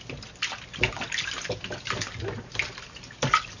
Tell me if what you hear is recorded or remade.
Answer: recorded